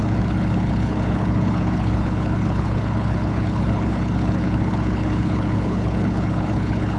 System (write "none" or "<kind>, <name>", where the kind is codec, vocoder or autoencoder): codec, HILCodec